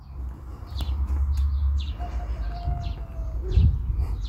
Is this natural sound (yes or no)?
yes